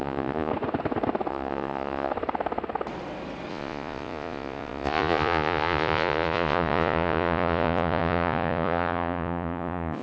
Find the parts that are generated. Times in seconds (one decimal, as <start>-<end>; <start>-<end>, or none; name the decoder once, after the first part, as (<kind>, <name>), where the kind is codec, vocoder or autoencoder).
0.0-0.5 (vocoder, Vocos); 1.3-2.1; 3.5-10.0